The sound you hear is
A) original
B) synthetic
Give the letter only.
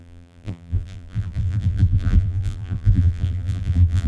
B